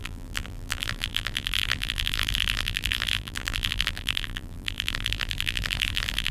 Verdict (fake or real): fake